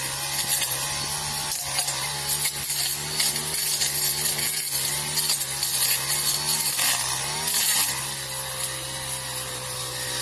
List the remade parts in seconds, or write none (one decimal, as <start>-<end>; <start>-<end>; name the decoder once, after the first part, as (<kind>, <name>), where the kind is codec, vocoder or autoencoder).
none